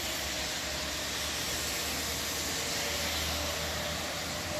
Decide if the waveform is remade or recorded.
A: recorded